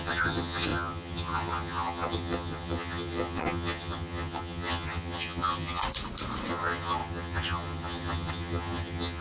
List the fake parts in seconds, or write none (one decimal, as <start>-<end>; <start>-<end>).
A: 0.0-5.8; 6.5-9.2

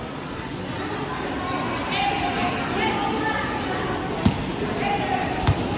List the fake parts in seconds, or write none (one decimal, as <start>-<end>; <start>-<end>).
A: none

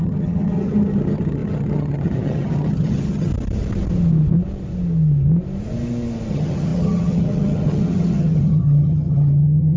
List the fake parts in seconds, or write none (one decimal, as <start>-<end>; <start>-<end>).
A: 0.0-3.3; 6.3-9.8

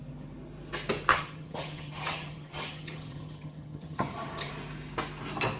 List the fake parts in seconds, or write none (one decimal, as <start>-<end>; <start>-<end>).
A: 1.1-4.5

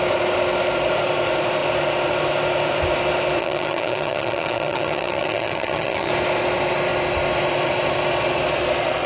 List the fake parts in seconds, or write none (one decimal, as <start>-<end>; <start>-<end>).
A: 3.4-6.1

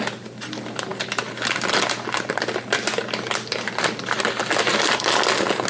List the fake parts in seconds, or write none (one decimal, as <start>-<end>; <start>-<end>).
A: none

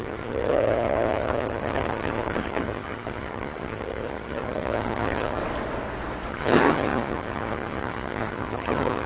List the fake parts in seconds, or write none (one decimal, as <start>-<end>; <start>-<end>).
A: 0.0-5.4; 6.3-9.1

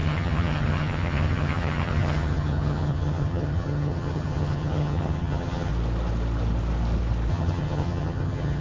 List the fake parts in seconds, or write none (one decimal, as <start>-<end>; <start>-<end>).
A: 0.0-5.7; 7.3-8.6